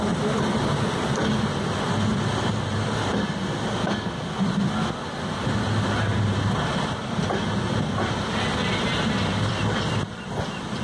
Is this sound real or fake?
real